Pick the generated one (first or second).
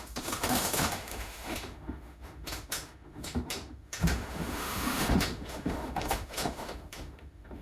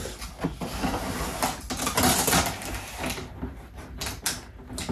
first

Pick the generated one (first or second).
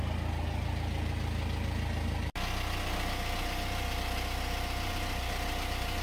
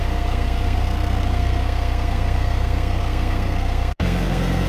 second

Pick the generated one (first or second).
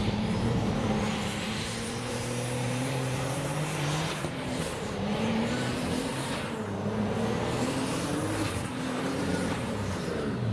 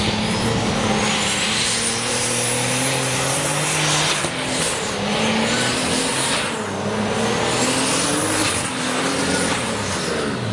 first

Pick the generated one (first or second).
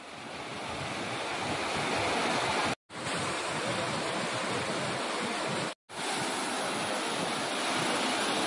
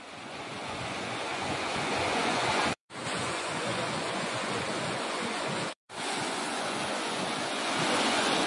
second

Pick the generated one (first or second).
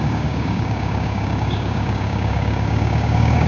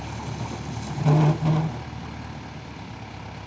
first